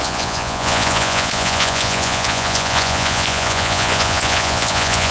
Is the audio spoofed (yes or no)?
yes